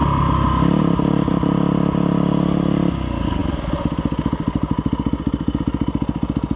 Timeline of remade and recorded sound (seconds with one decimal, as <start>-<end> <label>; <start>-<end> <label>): 0.0-6.6 recorded